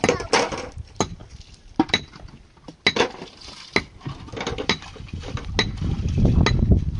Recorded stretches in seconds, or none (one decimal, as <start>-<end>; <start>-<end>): 0.0-7.0